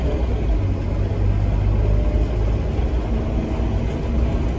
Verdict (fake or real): real